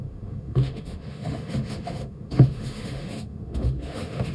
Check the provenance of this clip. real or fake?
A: fake